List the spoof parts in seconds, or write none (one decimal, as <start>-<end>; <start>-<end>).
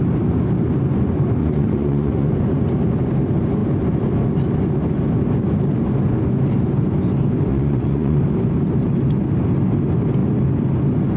1.4-2.3; 7.5-8.2